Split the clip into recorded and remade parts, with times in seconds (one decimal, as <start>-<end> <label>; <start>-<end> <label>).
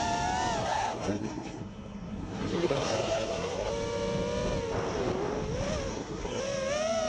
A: 0.0-0.6 recorded; 0.6-3.7 remade; 3.7-5.9 recorded; 5.9-6.4 remade; 6.4-7.1 recorded